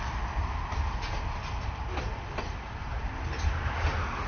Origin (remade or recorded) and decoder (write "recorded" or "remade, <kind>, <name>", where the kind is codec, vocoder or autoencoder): recorded